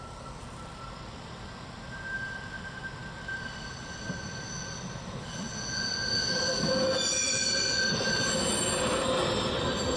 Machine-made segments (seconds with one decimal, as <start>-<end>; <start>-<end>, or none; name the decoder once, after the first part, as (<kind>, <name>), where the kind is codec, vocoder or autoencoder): none